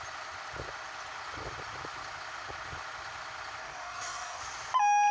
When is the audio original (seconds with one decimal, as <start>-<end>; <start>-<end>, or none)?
0.0-3.6; 4.4-5.1